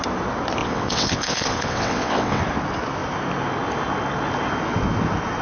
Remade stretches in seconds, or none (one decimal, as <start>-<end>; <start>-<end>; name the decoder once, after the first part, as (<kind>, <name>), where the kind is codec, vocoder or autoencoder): 0.6-2.4 (vocoder, WaveNeXt)